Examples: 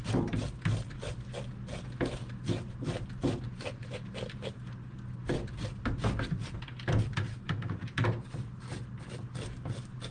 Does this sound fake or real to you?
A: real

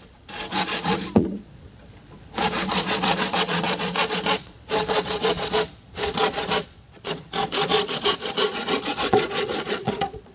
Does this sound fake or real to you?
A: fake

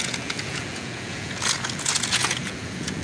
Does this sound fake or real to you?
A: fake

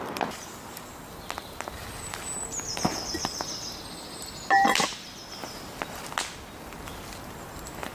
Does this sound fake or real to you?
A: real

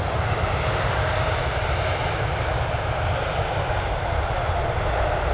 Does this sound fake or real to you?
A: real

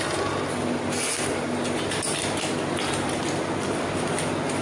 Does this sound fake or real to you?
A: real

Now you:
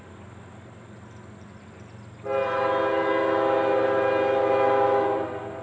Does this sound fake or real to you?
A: real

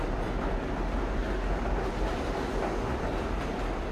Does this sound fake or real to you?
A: real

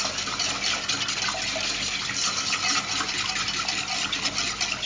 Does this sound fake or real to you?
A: real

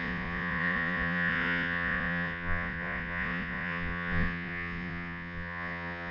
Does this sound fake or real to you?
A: fake